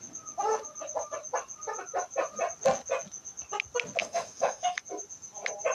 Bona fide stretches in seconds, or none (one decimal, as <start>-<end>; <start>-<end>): 0.0-4.0; 4.8-5.7